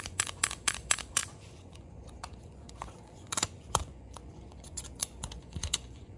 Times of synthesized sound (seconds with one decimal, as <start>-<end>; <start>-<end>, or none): 0.0-6.2